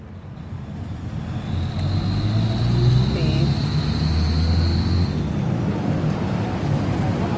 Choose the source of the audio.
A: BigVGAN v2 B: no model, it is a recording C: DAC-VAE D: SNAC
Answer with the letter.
B